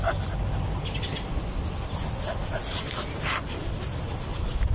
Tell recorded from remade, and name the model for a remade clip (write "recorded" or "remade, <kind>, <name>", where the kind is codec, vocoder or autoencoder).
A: recorded